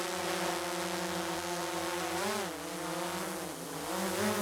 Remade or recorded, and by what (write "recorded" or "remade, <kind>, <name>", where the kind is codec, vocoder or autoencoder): recorded